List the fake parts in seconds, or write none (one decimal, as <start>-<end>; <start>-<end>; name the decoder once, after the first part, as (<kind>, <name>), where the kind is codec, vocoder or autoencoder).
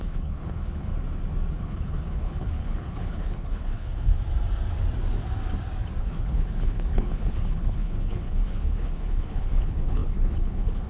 0.0-0.9 (codec, HILCodec); 1.5-4.1; 6.0-10.9